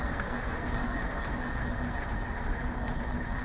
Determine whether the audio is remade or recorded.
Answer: remade